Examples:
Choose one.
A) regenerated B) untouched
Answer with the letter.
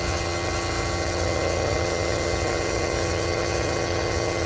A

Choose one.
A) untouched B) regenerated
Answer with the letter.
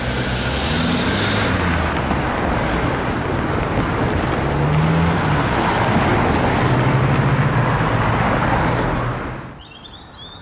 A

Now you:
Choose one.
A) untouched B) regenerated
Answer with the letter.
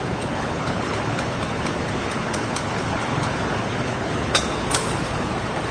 B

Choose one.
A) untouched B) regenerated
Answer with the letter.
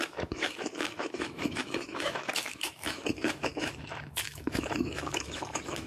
B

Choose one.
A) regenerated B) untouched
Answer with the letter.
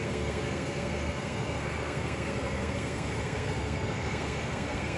A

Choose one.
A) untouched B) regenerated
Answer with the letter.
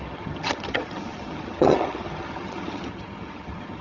B